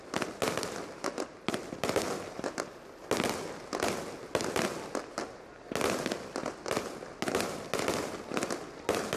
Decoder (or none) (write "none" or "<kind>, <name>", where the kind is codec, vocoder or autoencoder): none